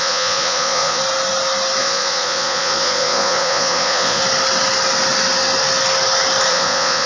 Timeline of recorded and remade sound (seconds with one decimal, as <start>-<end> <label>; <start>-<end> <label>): 0.0-1.0 remade; 1.0-1.8 recorded; 1.8-4.2 remade; 4.2-6.5 recorded; 6.5-7.1 remade